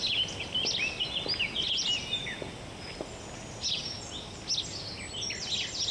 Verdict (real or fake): real